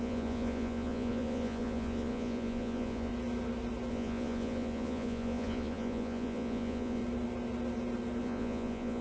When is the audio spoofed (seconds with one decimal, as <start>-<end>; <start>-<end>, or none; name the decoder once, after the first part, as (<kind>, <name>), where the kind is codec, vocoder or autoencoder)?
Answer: 0.0-3.1 (vocoder, Vocos); 3.9-7.0; 8.2-9.0